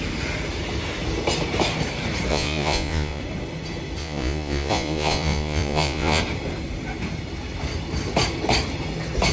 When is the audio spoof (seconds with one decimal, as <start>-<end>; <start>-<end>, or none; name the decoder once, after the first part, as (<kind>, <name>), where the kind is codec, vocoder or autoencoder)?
2.3-3.2 (vocoder, Vocos); 4.0-6.2